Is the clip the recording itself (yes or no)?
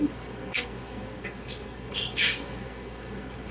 no